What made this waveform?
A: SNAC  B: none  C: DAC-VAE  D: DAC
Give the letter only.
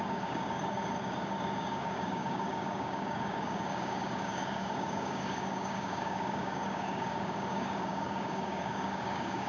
D